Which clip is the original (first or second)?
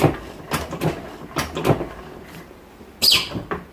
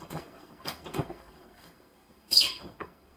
first